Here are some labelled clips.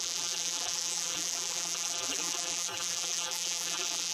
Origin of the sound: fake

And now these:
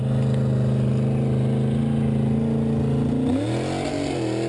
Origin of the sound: real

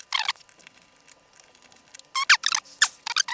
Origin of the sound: real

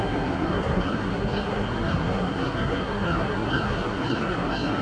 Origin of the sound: fake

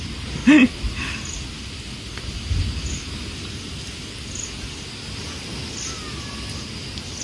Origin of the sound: real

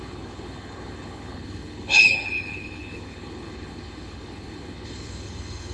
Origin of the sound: fake